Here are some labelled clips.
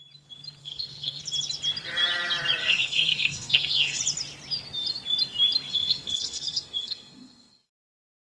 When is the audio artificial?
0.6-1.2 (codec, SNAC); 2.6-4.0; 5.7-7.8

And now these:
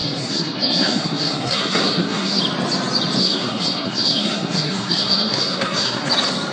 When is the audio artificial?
0.0-2.4 (codec, SNAC); 3.2-6.1